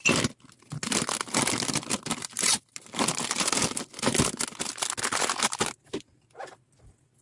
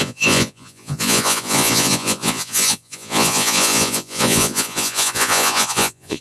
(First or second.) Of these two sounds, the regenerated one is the second